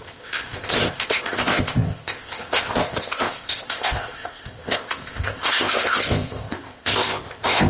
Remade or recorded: remade